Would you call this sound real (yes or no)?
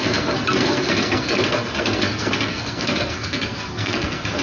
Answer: no